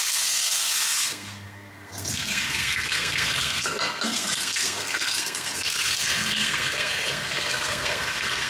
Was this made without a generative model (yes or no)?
no